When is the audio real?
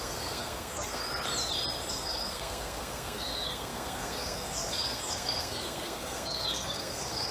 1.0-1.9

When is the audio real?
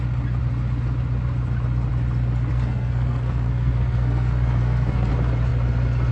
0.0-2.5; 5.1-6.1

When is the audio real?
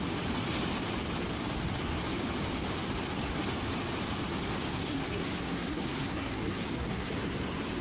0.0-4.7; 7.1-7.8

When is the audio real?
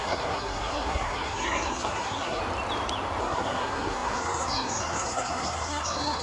2.4-3.2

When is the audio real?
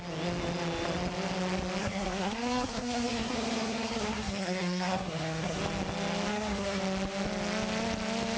0.0-1.8; 5.6-6.3; 6.8-8.4